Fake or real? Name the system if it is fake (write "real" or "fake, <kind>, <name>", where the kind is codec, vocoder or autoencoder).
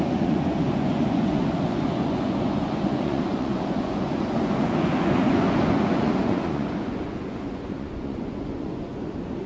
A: fake, vocoder, Vocos